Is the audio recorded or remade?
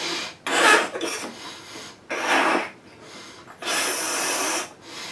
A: recorded